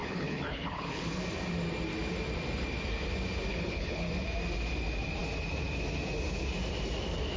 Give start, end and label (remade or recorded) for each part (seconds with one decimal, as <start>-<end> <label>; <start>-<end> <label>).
0.0-1.2 remade; 1.2-3.5 recorded; 3.5-4.1 remade; 4.1-7.4 recorded